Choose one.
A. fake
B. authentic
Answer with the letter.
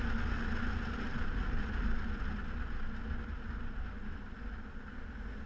B